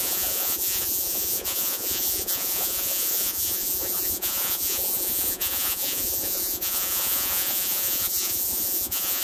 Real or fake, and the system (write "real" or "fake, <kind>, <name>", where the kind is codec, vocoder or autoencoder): fake, vocoder, Vocos